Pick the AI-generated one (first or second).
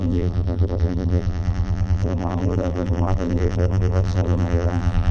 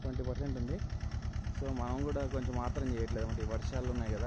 first